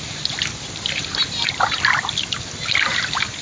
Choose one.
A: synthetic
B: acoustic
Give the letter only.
B